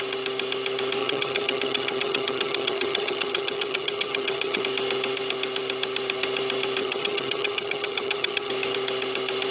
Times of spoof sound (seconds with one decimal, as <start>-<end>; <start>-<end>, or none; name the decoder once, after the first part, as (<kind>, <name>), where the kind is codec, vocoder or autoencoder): 1.0-4.6 (vocoder, HiFi-GAN); 6.8-8.5

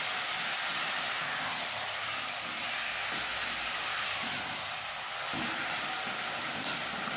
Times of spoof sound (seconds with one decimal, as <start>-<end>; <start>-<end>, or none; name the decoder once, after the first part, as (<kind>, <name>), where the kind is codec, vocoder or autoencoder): 0.7-4.9 (vocoder, BigVGAN v2)